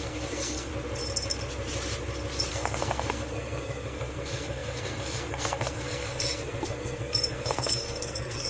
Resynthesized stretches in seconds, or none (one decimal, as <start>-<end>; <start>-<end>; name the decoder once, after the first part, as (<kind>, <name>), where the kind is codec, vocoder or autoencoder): 0.0-0.7 (codec, SNAC); 2.5-8.5